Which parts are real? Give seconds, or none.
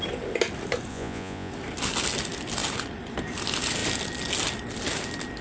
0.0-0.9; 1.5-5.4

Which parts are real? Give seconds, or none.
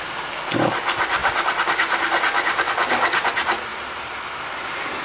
0.0-5.0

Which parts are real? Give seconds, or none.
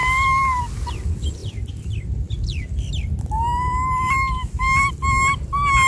0.0-5.9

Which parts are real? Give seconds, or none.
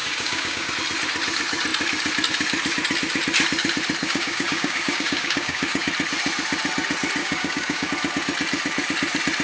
0.7-4.0; 5.9-7.2; 7.9-9.4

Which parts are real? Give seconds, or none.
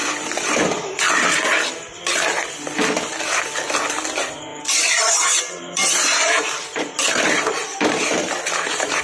1.0-4.5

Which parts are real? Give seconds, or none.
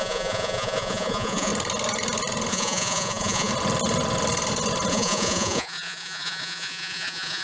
1.5-2.5; 3.5-4.9